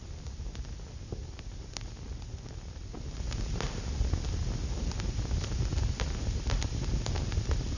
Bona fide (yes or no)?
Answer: yes